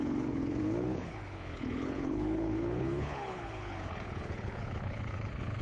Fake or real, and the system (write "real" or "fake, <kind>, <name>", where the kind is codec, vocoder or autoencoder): fake, codec, HILCodec